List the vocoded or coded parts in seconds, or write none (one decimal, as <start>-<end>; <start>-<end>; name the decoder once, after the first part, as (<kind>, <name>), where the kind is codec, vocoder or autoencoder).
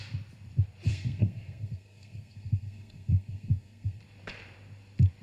0.9-4.0 (codec, SNAC)